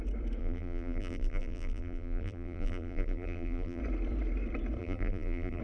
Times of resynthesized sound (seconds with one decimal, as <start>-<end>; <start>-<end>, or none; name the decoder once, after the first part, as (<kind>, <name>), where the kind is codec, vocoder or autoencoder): 0.4-3.8 (vocoder, BigVGAN v2); 4.8-5.6